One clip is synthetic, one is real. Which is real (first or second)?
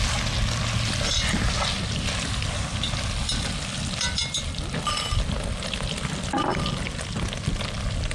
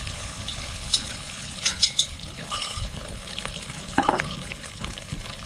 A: first